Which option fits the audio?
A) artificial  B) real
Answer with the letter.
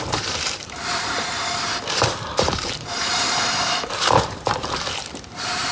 A